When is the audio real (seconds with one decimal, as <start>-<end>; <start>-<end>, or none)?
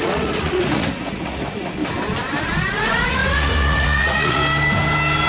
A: 1.8-2.4; 4.4-5.3